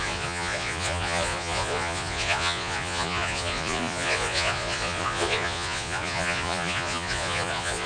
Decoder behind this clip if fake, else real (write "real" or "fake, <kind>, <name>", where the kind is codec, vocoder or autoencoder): fake, vocoder, Vocos